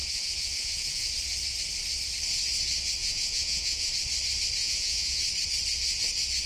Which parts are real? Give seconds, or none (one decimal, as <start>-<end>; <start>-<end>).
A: 1.1-3.0; 3.9-4.6; 5.2-6.5